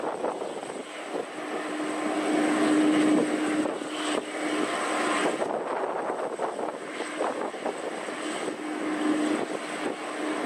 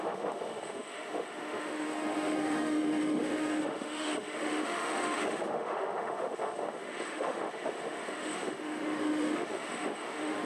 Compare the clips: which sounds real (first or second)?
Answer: first